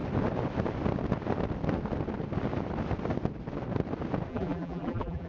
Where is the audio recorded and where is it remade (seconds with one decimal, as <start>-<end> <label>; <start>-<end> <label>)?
0.0-4.3 recorded; 4.3-5.3 remade